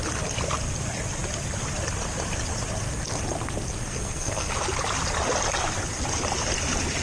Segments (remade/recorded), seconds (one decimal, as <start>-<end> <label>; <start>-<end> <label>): 0.0-3.9 recorded; 3.9-4.5 remade; 4.5-7.0 recorded